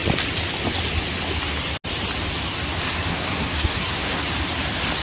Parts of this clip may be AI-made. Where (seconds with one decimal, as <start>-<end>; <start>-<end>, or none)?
3.1-4.2